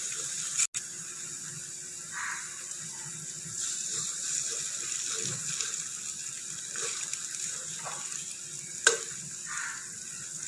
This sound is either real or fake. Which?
real